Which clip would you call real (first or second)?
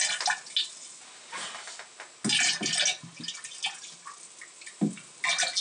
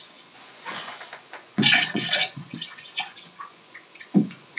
first